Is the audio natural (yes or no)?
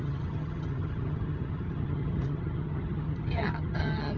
no